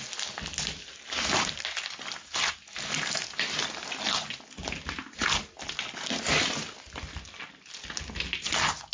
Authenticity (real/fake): real